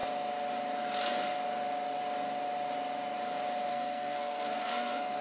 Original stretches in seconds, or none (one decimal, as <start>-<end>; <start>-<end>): 0.0-3.7